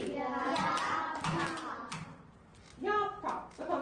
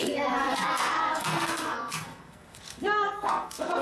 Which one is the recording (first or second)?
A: first